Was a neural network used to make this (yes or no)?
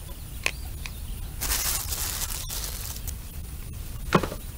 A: no